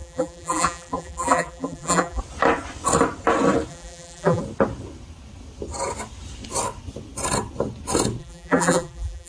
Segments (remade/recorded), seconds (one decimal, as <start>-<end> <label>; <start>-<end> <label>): 0.0-2.2 remade; 2.2-3.7 recorded; 3.7-4.4 remade; 4.4-8.2 recorded; 8.2-9.3 remade